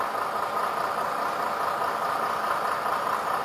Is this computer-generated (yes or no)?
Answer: no